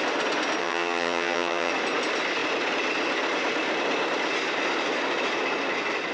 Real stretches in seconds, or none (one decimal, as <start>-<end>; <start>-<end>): 0.0-0.6; 1.7-6.1